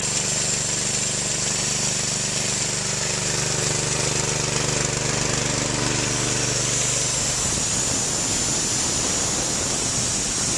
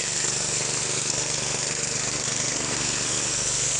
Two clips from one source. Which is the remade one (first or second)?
second